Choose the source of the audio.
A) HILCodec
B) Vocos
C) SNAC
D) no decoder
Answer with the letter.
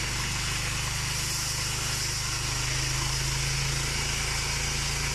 D